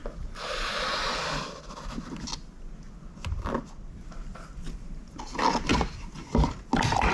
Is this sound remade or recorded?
recorded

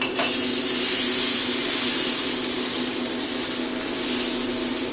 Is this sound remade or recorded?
recorded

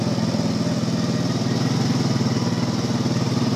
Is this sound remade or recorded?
recorded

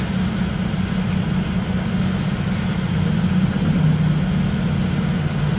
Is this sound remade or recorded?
recorded